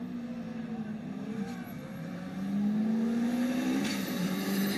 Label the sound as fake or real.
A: real